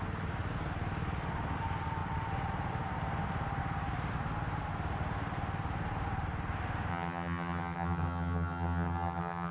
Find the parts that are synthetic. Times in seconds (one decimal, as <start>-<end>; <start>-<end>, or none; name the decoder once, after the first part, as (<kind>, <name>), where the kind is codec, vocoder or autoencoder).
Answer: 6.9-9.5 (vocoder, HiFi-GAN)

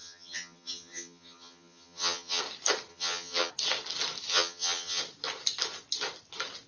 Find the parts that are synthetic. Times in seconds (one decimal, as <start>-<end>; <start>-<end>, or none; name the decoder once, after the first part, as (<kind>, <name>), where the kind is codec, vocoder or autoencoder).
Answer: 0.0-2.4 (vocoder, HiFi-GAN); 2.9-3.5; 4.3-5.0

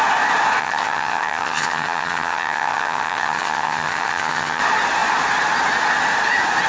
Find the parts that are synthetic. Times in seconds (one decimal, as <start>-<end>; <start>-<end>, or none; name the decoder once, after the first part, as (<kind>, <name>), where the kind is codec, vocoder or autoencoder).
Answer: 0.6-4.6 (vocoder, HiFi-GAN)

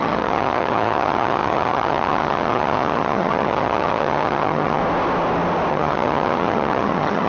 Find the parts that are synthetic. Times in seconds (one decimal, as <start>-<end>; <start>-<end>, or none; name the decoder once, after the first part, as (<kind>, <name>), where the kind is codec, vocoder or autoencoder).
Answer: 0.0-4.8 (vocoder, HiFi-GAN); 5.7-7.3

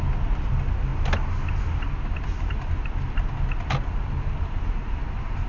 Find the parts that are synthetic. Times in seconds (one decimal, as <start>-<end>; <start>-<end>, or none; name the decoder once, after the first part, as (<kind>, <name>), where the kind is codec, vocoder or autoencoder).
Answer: none

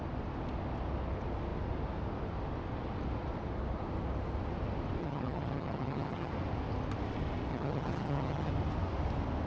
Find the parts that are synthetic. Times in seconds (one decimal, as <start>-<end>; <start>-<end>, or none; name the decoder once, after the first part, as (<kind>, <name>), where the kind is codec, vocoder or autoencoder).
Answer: 5.0-6.3 (vocoder, HiFi-GAN); 7.5-8.5